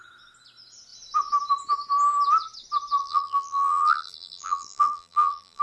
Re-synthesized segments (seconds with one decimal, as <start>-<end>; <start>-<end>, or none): 3.0-5.6